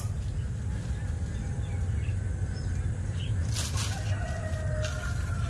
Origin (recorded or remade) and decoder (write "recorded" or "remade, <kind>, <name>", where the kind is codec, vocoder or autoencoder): recorded